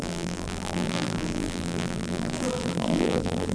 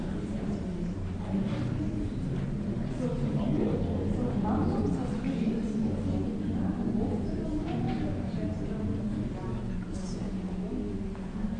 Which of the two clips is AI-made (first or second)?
first